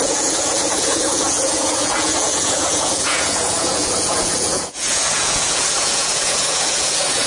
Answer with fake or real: fake